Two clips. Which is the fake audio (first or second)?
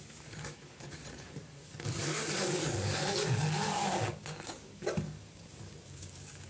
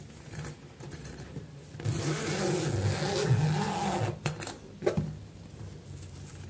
first